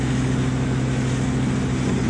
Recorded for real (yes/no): yes